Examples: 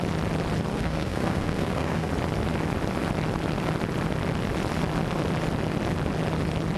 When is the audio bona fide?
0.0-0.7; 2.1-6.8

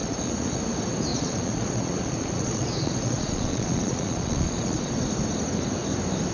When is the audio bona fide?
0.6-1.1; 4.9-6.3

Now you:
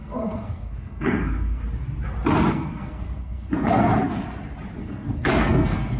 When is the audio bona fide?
1.6-2.5; 3.9-4.8

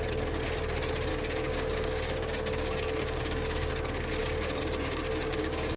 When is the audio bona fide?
0.0-1.1; 3.7-4.2

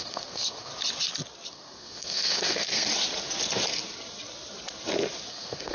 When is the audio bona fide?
0.7-1.5; 2.9-5.3